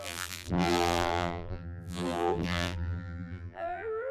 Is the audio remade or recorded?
remade